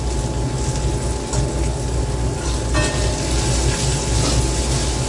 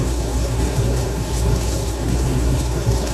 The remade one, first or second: second